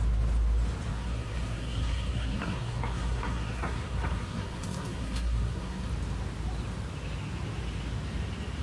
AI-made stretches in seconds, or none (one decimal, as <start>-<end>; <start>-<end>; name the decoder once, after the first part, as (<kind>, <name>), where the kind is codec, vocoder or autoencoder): 0.9-5.9 (codec, SNAC)